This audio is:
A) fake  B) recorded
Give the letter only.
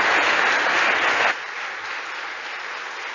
B